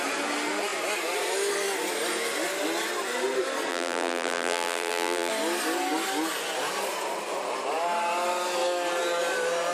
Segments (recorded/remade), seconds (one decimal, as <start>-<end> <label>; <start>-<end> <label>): 0.0-3.7 recorded; 3.7-5.3 remade; 5.3-9.7 recorded

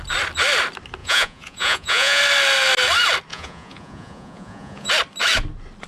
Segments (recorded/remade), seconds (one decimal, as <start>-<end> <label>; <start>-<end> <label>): 0.0-1.0 recorded; 1.0-2.2 remade; 2.2-3.3 recorded; 3.3-4.9 remade; 4.9-5.9 recorded

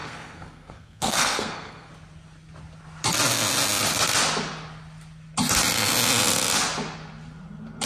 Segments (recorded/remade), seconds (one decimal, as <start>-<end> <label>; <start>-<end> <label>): 0.0-1.9 remade; 1.9-7.9 recorded